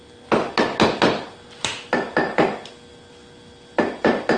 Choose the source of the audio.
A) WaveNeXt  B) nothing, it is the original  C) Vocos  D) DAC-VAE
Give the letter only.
B